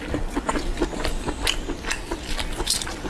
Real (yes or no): yes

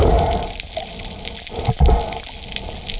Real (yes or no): yes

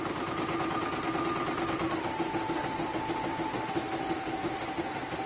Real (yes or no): yes